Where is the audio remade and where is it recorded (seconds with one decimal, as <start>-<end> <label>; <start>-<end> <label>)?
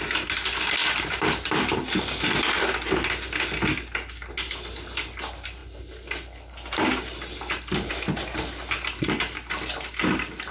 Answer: 0.0-10.5 recorded